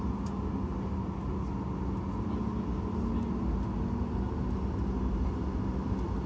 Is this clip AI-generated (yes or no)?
no